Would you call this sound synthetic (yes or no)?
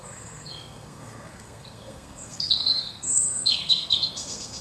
yes